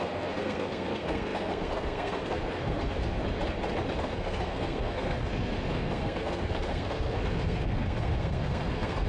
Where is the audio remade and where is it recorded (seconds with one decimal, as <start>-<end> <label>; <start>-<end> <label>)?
0.0-3.2 remade; 3.2-4.0 recorded; 4.0-9.1 remade